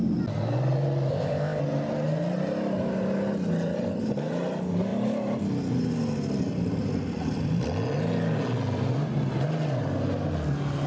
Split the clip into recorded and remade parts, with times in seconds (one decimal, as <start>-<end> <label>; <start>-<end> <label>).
0.0-1.1 recorded; 1.1-1.6 remade; 1.6-10.9 recorded